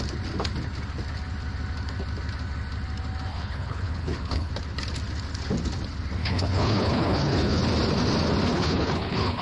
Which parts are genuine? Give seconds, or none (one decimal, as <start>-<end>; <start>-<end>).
0.0-3.3; 4.5-6.2; 7.6-8.5